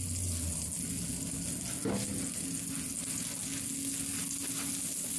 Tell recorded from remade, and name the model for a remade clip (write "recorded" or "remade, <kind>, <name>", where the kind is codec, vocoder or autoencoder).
recorded